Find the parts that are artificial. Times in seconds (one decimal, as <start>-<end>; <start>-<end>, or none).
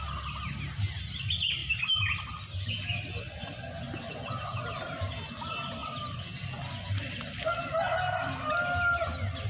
none